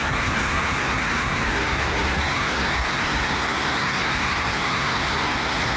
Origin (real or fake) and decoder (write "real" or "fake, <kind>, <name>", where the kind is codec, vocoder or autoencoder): fake, codec, SNAC